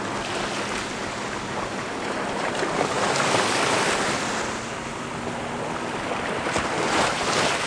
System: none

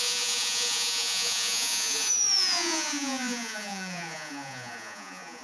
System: vocoder, Vocos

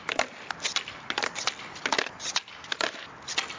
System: none